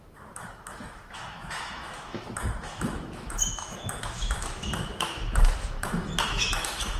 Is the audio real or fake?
fake